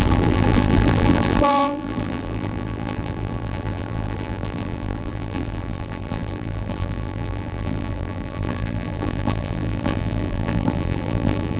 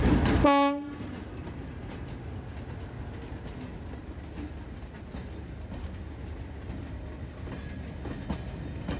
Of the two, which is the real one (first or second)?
second